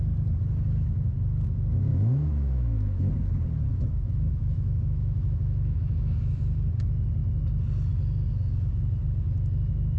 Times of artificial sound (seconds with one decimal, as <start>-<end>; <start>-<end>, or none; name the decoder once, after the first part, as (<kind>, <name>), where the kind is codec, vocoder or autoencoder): 1.9-3.1 (autoencoder, DAC-VAE); 3.7-6.3